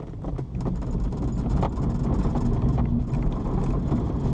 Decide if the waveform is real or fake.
real